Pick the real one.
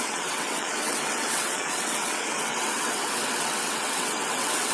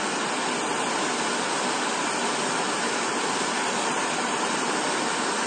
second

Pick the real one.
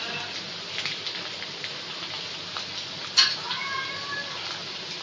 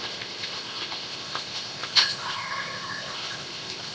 first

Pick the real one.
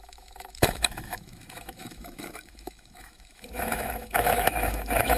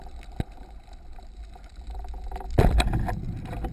second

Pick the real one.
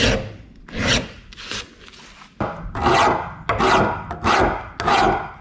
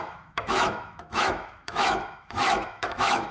first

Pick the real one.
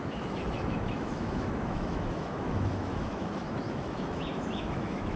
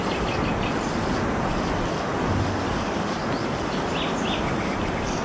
second